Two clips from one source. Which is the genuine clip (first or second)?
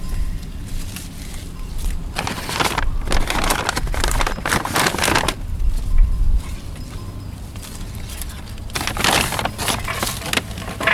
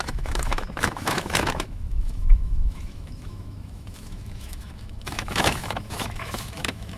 first